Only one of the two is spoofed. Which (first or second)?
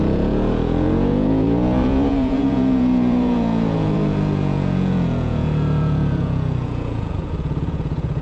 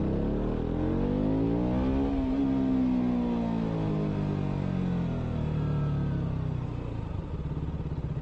first